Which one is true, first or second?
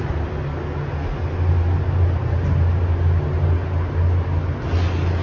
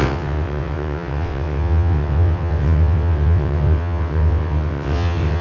first